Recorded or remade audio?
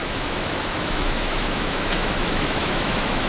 remade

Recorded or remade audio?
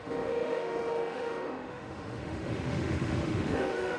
remade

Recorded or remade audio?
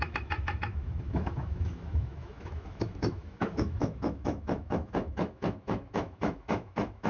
remade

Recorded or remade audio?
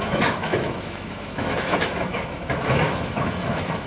remade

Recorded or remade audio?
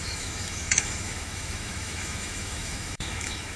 remade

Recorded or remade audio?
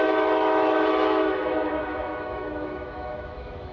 remade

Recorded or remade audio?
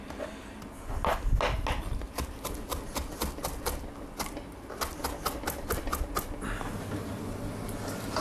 recorded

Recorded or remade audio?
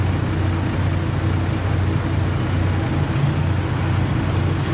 recorded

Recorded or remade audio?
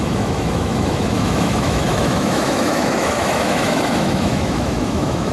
remade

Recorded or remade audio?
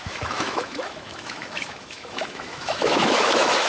remade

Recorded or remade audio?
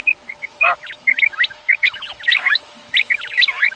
remade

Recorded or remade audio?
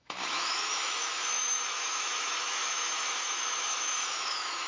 remade